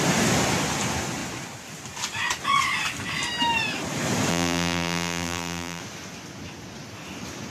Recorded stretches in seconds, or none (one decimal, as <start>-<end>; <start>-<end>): 0.0-4.3; 5.8-7.5